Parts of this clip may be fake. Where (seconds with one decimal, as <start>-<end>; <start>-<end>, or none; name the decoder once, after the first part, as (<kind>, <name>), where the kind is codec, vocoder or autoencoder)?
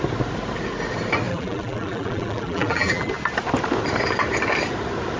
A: 1.3-3.1 (vocoder, BigVGAN v2)